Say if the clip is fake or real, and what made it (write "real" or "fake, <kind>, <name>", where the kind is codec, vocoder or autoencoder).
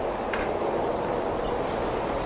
real